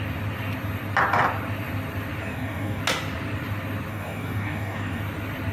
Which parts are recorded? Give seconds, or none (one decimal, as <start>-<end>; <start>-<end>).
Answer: 0.0-2.2; 2.8-3.9; 5.0-5.5